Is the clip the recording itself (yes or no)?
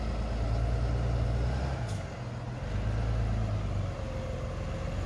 yes